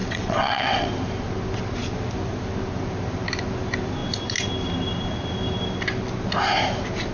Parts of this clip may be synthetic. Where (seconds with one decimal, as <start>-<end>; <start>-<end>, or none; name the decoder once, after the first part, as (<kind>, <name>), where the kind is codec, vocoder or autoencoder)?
0.0-0.9 (vocoder, WaveNeXt)